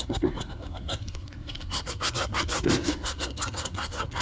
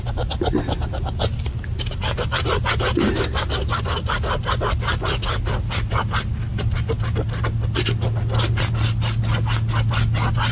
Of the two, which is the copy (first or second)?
first